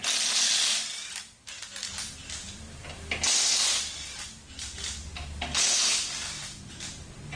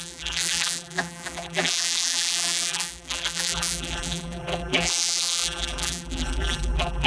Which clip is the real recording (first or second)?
first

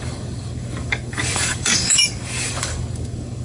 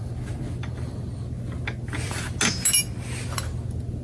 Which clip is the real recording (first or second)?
second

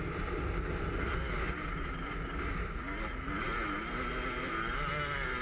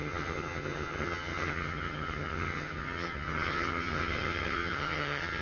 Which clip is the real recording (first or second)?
first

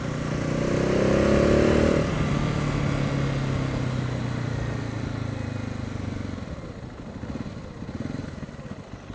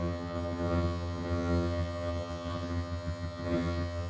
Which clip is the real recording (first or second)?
first